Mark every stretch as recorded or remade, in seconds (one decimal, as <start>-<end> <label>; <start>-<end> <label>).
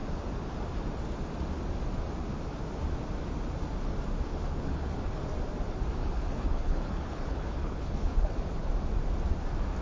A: 0.0-4.3 recorded; 4.3-4.9 remade; 4.9-6.0 recorded; 6.0-8.7 remade; 8.7-9.8 recorded